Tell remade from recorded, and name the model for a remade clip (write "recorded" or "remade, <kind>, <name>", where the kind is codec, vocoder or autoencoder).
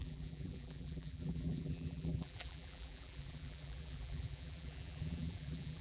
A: remade, vocoder, BigVGAN v2